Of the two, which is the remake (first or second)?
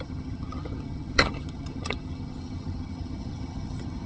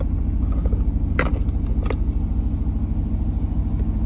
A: first